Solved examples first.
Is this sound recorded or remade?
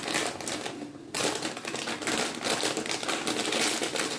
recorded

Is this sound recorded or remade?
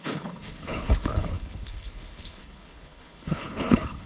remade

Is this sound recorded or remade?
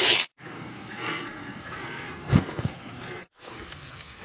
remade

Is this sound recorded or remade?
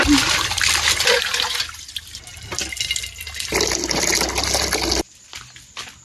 recorded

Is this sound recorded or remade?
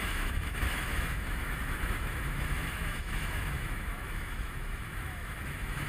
remade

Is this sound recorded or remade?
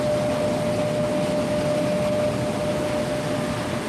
recorded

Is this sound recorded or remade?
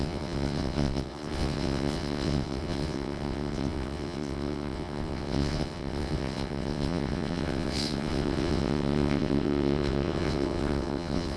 remade